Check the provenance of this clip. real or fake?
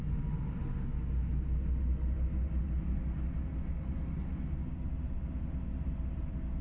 real